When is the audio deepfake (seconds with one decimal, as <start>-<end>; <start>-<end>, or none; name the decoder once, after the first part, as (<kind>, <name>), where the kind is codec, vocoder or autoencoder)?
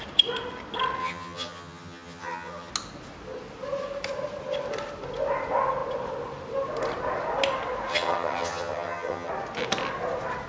1.0-2.7 (vocoder, HiFi-GAN); 7.9-9.3